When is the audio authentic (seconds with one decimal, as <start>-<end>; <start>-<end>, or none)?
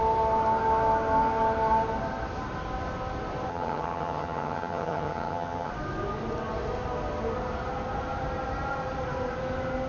0.0-3.5; 5.7-9.9